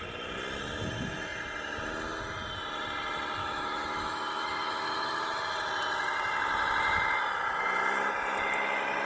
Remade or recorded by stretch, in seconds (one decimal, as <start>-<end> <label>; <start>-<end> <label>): 0.0-3.4 recorded; 3.4-5.4 remade; 5.4-9.1 recorded